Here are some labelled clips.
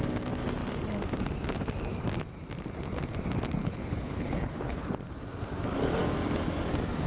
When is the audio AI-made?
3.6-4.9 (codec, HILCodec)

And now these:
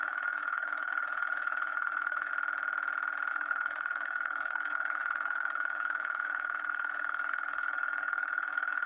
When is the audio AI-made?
0.0-2.3 (codec, HILCodec); 3.3-8.9

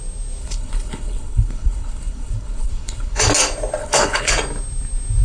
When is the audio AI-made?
0.4-3.2 (codec, HILCodec); 3.8-4.3

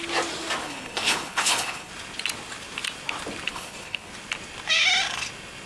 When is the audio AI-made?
0.6-1.9 (codec, HILCodec); 3.5-4.1

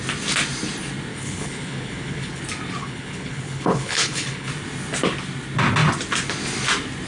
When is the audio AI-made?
1.1-2.4 (codec, HILCodec); 2.8-4.5

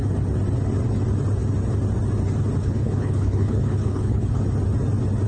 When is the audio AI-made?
2.6-4.4 (codec, HILCodec)

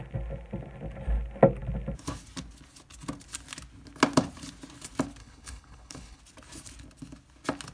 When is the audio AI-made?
5.2-6.2 (codec, HILCodec)